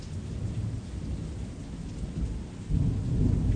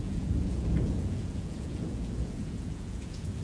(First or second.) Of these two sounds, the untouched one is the first